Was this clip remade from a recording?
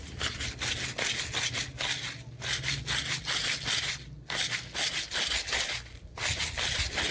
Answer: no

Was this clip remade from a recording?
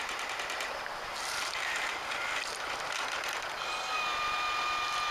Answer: no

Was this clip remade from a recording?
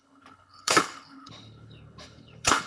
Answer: yes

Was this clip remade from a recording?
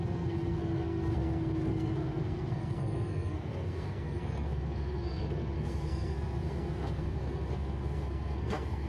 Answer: yes